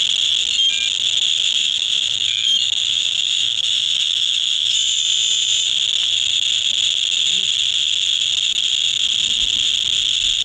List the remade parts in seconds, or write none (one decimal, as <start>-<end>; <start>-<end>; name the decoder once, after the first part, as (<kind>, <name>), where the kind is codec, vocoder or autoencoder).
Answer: 1.6-5.0 (autoencoder, DAC-VAE)